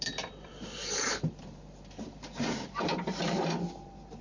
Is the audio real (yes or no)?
no